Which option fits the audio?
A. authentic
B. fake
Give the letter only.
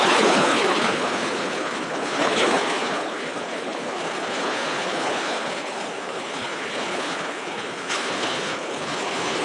B